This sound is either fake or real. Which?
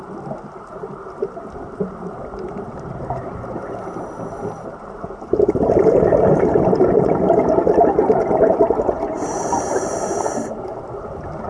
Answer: fake